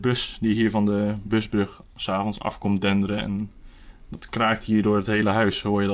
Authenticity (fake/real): fake